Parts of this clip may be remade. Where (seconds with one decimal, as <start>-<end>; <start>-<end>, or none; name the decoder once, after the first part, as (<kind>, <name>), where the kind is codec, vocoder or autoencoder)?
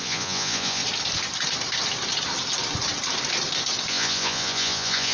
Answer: 0.0-0.8 (vocoder, Vocos); 3.9-5.1